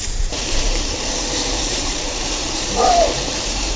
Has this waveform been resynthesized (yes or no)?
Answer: yes